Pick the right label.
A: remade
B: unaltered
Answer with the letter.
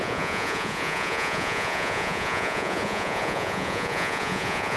A